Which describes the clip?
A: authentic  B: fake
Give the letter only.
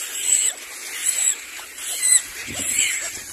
A